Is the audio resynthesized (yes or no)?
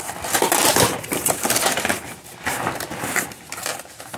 no